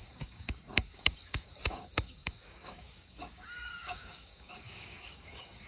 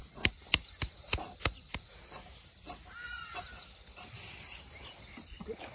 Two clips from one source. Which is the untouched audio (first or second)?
second